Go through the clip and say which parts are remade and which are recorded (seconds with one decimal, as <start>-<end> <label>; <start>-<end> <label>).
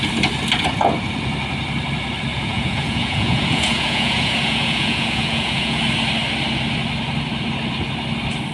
0.0-2.3 recorded; 2.3-5.8 remade; 5.8-8.5 recorded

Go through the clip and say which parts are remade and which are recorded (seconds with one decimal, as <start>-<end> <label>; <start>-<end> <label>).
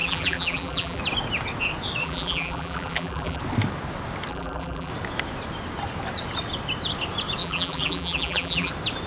0.0-1.0 remade; 1.0-2.0 recorded; 2.0-3.4 remade; 3.4-4.3 recorded; 4.3-4.9 remade; 4.9-7.4 recorded; 7.4-8.7 remade; 8.7-9.1 recorded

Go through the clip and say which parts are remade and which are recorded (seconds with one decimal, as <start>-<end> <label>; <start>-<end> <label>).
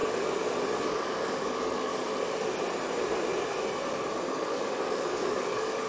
0.0-0.8 recorded; 0.8-1.9 remade; 1.9-4.3 recorded; 4.3-5.9 remade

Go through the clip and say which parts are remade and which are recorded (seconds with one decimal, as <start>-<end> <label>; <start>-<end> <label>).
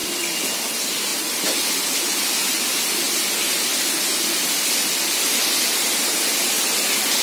0.0-7.2 recorded